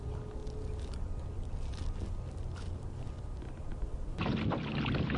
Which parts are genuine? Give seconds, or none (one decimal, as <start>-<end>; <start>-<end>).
0.0-5.2